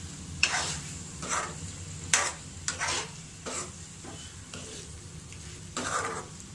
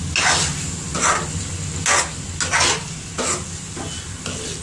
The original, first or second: second